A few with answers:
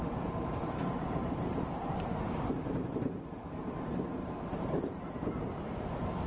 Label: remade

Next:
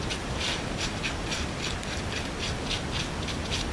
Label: recorded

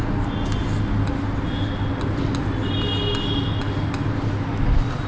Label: recorded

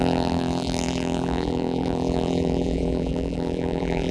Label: remade